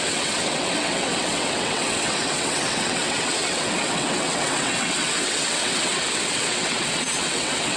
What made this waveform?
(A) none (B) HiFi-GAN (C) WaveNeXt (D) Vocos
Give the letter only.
C